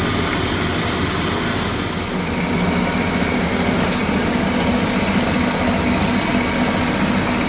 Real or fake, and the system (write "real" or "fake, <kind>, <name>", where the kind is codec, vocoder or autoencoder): real